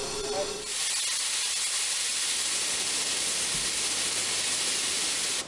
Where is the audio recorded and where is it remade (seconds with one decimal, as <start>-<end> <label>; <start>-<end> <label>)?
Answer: 0.0-5.5 recorded